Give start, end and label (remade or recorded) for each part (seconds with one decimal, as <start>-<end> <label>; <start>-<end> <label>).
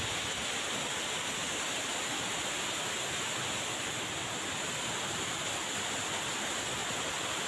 0.0-7.5 recorded